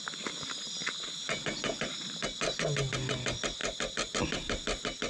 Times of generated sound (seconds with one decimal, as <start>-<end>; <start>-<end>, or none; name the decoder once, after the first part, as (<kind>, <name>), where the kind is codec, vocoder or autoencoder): none